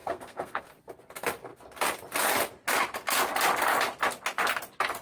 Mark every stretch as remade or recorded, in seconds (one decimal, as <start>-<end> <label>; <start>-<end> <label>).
0.0-0.6 remade; 0.6-5.0 recorded